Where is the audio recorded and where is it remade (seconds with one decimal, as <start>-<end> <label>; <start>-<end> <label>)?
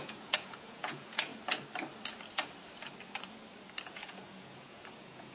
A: 0.0-1.3 remade; 1.3-3.8 recorded; 3.8-5.3 remade